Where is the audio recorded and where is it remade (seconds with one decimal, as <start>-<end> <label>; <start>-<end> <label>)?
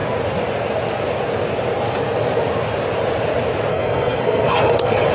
0.0-3.7 recorded; 3.7-5.1 remade